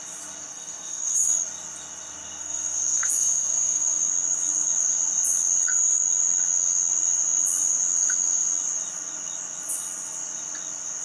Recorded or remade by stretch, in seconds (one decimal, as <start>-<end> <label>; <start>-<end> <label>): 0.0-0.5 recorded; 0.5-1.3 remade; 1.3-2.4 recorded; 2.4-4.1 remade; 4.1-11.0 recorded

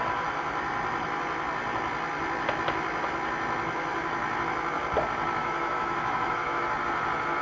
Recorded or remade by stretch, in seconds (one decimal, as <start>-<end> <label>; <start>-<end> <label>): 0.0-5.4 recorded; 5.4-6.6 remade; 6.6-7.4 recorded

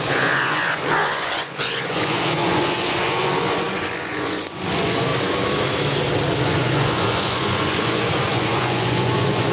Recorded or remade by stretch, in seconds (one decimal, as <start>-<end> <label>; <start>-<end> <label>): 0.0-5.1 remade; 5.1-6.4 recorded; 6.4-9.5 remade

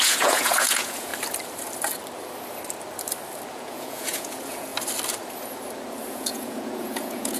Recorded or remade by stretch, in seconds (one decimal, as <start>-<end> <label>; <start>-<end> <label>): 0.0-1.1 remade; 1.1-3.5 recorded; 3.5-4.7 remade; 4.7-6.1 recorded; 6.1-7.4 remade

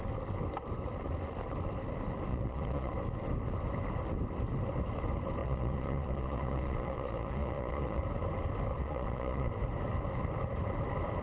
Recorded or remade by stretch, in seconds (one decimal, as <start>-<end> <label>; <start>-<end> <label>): 0.0-2.3 recorded; 2.3-2.9 remade; 2.9-5.4 recorded; 5.4-8.0 remade; 8.0-8.7 recorded; 8.7-9.5 remade; 9.5-11.2 recorded

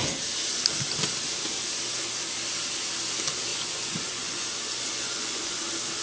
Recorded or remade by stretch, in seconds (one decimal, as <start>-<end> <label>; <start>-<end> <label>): 0.0-3.5 recorded; 3.5-5.6 remade; 5.6-6.0 recorded

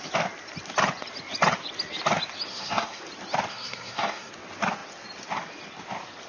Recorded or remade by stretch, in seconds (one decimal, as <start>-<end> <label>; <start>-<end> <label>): 0.0-2.5 recorded; 2.5-3.0 remade; 3.0-3.5 recorded; 3.5-4.3 remade; 4.3-6.3 recorded